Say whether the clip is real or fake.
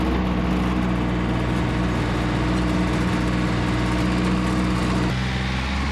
real